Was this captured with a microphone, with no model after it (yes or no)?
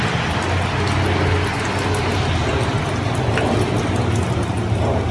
yes